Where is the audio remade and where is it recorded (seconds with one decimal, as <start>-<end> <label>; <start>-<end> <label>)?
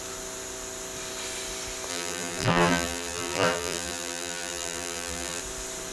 0.0-1.9 recorded; 1.9-5.4 remade; 5.4-5.9 recorded